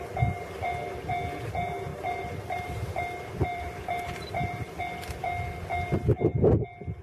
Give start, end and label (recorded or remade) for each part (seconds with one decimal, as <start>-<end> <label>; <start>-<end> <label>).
0.0-1.9 recorded; 1.9-4.8 remade; 4.8-7.0 recorded